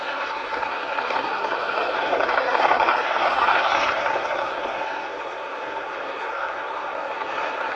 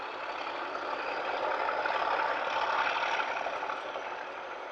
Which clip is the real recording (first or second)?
second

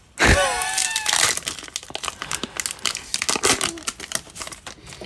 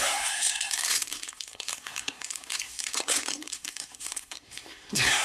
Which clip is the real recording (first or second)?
first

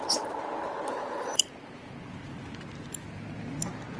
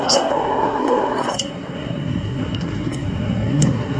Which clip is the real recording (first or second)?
first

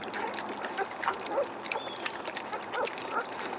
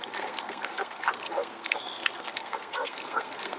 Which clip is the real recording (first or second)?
first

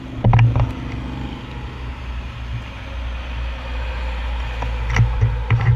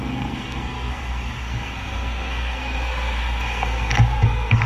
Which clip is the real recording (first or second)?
first